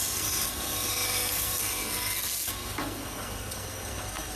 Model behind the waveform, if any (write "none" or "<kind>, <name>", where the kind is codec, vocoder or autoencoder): codec, SNAC